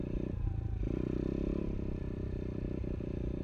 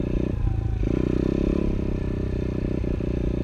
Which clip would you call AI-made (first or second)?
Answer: first